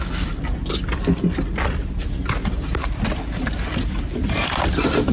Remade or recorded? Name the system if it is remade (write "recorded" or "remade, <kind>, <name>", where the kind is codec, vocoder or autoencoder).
recorded